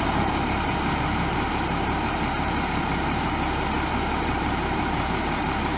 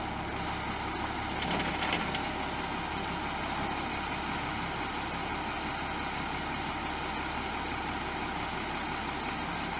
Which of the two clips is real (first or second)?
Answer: second